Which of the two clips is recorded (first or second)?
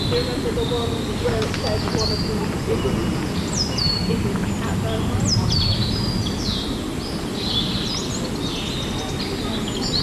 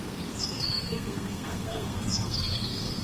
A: first